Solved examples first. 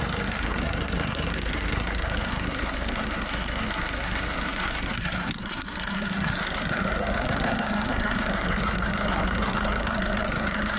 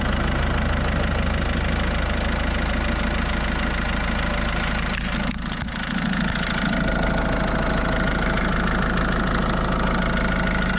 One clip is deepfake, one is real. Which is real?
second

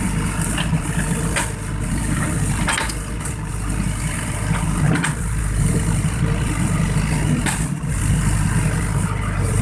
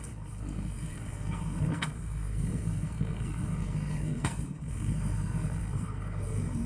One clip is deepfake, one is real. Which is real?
first